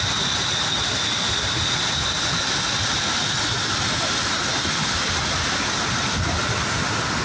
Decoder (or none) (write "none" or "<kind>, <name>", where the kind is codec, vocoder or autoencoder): none